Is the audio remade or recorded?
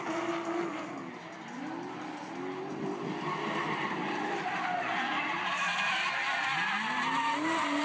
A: recorded